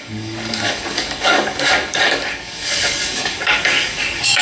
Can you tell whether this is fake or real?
fake